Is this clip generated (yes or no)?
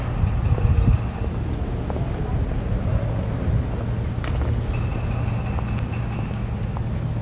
no